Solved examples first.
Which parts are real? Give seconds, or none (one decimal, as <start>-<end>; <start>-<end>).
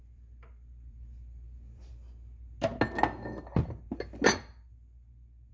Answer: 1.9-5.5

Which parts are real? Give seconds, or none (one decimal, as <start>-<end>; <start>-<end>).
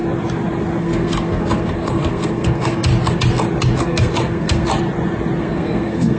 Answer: 0.0-0.8; 2.9-3.8; 4.7-5.4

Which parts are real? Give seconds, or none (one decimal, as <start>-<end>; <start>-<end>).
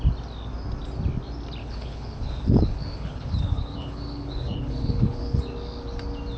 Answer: 0.0-1.6; 5.4-6.4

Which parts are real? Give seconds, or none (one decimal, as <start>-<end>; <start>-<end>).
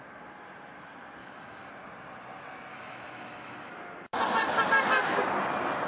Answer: 0.0-1.2; 1.7-2.7; 3.7-5.9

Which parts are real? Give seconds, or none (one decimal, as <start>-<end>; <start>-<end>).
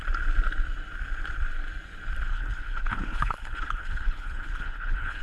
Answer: 0.0-2.3